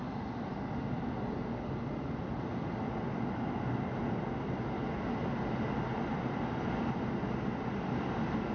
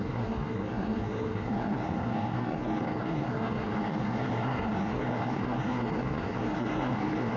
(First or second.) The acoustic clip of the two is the first